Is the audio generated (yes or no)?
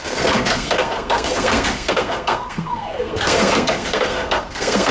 yes